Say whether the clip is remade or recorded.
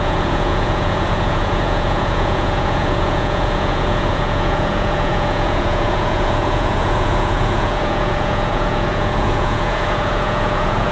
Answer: remade